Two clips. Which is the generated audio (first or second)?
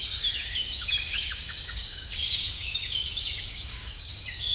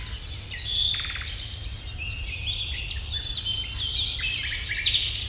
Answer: first